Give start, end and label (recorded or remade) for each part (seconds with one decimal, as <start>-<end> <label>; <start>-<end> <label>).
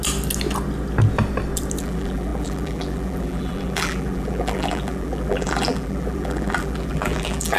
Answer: 0.0-1.8 recorded; 1.8-7.6 remade